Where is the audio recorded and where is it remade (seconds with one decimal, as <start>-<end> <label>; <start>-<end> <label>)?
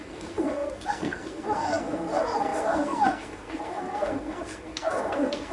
0.0-5.5 remade